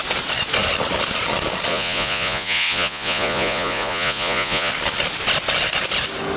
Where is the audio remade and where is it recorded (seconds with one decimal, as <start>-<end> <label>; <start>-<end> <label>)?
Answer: 0.0-1.7 recorded; 1.7-4.7 remade; 4.7-6.4 recorded